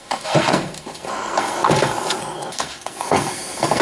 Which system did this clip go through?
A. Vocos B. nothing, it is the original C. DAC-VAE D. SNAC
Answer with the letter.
D